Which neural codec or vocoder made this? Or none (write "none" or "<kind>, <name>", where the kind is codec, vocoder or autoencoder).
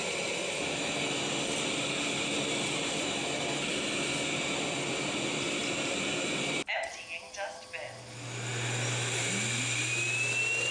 none